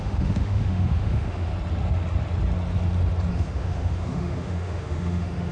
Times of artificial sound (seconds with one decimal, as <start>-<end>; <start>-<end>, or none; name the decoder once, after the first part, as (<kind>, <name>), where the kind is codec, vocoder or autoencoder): 0.0-1.5 (autoencoder, DAC-VAE); 3.3-5.5